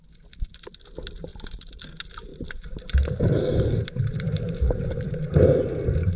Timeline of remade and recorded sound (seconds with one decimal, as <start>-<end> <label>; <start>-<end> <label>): 0.0-1.3 recorded; 1.3-1.8 remade; 1.8-2.3 recorded; 2.3-5.6 remade; 5.6-6.2 recorded